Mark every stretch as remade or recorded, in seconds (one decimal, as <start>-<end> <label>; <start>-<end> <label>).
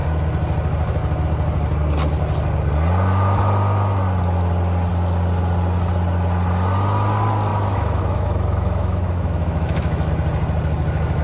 0.0-7.5 recorded; 7.5-10.1 remade; 10.1-11.2 recorded